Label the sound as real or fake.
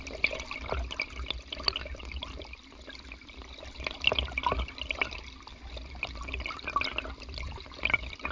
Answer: real